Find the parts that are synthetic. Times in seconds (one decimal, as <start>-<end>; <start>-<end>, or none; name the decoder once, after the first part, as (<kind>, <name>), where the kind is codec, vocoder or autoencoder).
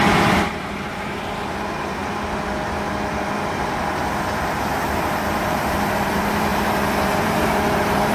0.0-2.0 (vocoder, BigVGAN v2); 5.0-8.1